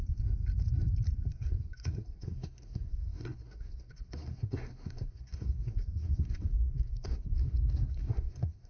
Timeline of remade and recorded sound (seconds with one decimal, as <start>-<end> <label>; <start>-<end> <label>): 0.0-1.3 recorded; 1.3-8.7 remade

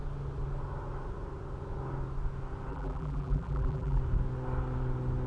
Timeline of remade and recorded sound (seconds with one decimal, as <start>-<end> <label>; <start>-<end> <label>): 0.0-2.7 recorded; 2.7-4.0 remade; 4.0-5.3 recorded

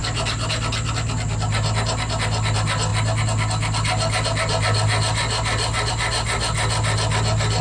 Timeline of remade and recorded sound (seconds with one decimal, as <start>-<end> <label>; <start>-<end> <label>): 0.0-7.6 recorded

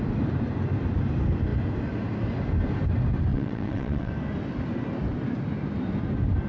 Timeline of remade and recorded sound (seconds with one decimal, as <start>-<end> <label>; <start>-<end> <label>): 0.0-3.3 recorded; 3.3-4.1 remade; 4.1-6.5 recorded

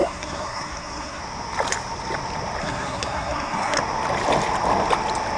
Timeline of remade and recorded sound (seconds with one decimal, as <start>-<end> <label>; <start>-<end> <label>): 0.0-1.2 remade; 1.2-2.6 recorded; 2.6-3.8 remade; 3.8-5.4 recorded

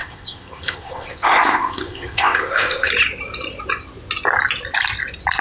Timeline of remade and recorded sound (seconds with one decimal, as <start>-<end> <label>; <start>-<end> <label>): 0.0-2.9 remade; 2.9-5.4 recorded

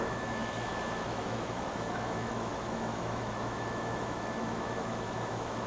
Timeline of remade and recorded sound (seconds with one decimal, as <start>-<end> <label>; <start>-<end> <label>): 0.0-5.7 remade